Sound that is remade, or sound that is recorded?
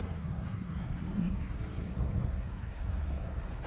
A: remade